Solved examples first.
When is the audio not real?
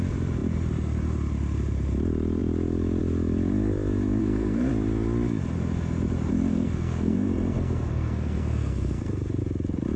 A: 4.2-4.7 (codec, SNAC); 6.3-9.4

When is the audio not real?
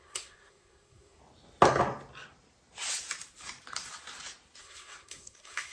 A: 0.0-1.2 (codec, SNAC); 4.6-5.7